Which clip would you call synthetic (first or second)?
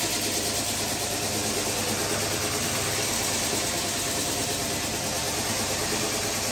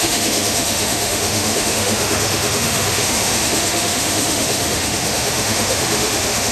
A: second